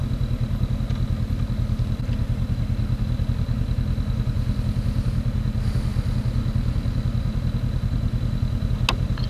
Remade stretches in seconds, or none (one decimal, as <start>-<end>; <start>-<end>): none